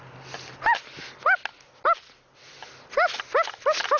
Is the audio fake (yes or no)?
no